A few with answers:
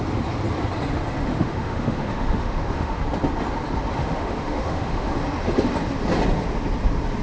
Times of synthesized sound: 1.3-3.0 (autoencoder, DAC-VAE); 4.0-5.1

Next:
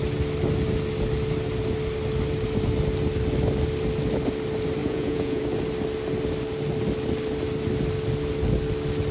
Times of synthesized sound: 4.8-5.4 (vocoder, Vocos)

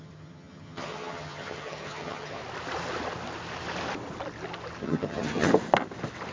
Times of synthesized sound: 0.0-2.4 (vocoder, HiFi-GAN); 4.8-5.5

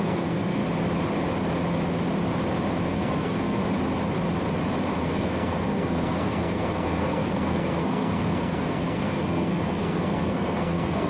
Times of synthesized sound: 0.0-0.6 (codec, SNAC); 2.8-3.6; 5.0-11.1

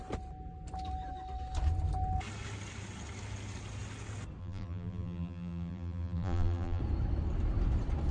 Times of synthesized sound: 4.4-6.8 (vocoder, BigVGAN v2)

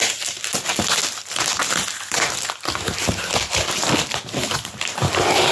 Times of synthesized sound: none

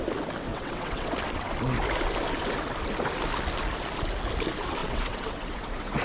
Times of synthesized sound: 0.5-1.1 (vocoder, WaveNeXt); 4.8-6.0

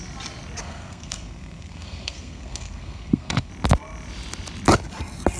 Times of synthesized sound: 0.6-3.5 (codec, SNAC)